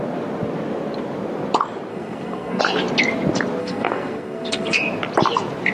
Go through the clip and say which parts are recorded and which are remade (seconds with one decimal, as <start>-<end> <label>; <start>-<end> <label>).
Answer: 0.0-1.9 recorded; 1.9-2.6 remade; 2.6-3.6 recorded; 3.6-4.8 remade; 4.8-5.7 recorded

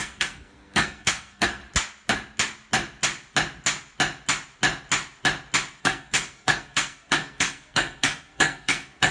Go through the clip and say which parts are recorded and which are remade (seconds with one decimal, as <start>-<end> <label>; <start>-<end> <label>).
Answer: 0.0-1.6 remade; 1.6-5.8 recorded; 5.8-9.1 remade